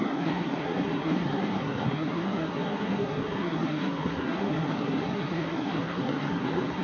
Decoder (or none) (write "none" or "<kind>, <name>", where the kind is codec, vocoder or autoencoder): codec, SNAC